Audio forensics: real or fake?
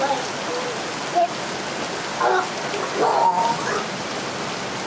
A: real